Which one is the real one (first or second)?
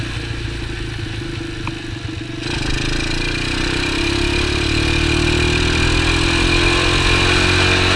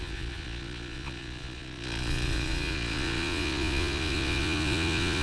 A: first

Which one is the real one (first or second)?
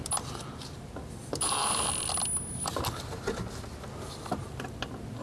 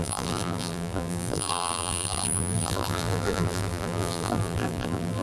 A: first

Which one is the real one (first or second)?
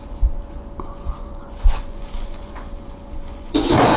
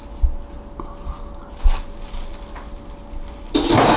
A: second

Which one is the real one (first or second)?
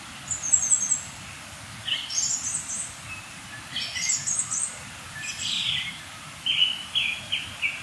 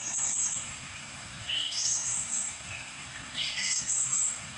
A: first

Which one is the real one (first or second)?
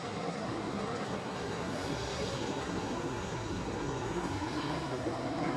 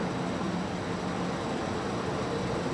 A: second